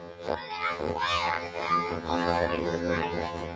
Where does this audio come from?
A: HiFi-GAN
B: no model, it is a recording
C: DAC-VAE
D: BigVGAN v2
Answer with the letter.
A